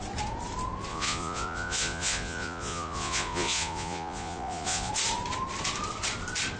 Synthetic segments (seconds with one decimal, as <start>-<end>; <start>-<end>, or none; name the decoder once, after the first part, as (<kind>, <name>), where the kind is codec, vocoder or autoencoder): 0.9-4.9 (vocoder, Vocos)